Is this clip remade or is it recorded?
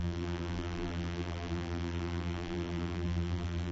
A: remade